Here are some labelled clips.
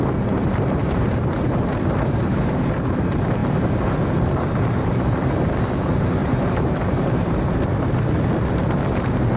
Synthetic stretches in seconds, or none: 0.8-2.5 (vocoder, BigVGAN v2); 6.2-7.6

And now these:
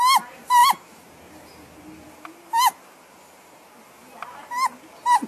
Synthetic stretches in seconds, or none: none

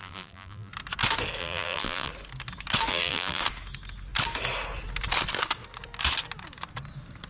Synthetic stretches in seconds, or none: 0.0-0.7 (vocoder, BigVGAN v2); 1.4-2.1; 2.9-3.4

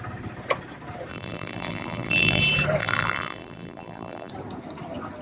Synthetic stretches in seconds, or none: 1.1-2.4 (vocoder, BigVGAN v2); 2.8-4.3